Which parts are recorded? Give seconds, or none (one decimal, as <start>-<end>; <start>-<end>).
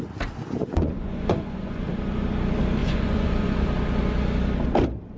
0.0-0.6; 1.9-2.8; 3.6-5.2